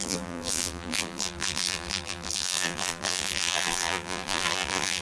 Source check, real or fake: fake